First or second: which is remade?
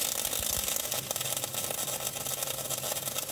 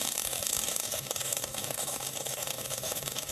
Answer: second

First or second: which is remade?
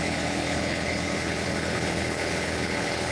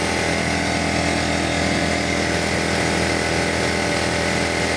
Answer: first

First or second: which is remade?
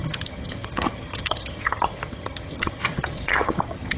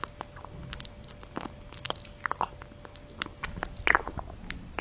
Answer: first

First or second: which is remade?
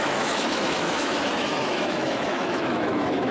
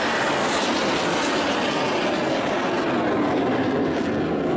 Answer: first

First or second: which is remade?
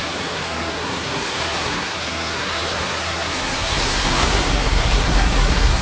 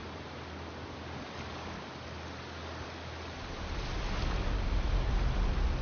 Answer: first